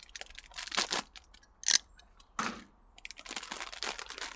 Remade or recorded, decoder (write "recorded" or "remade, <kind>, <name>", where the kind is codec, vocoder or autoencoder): recorded